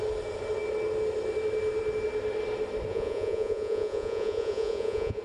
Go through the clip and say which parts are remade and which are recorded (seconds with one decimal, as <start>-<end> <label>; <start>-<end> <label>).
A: 0.0-2.9 recorded; 2.9-5.2 remade